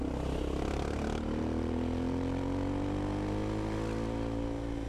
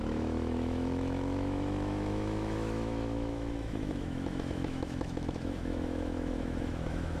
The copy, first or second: second